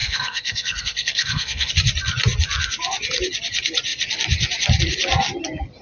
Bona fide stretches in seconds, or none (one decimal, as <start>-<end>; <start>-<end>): 1.7-5.8